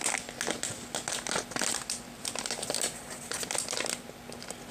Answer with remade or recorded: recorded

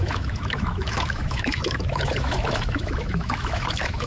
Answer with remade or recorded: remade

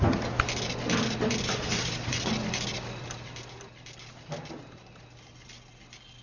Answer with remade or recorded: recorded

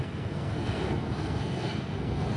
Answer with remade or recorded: remade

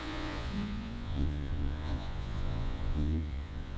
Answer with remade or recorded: remade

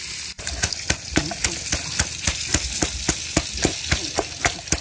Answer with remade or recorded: recorded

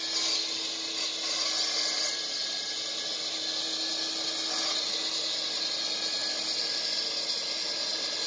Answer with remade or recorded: recorded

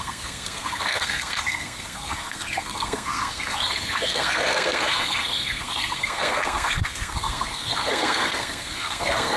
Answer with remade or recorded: remade